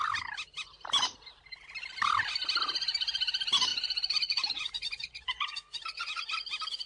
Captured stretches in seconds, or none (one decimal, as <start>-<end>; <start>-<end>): 0.0-3.7; 6.3-6.9